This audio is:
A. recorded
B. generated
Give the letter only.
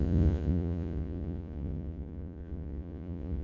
B